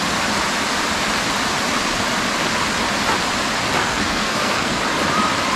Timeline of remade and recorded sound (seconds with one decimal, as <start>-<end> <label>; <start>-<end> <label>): 0.0-3.8 recorded; 3.8-4.8 remade; 4.8-5.6 recorded